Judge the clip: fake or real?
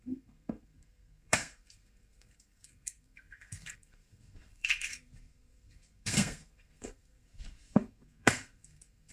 fake